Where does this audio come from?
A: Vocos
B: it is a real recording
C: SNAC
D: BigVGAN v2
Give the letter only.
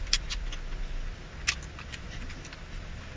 B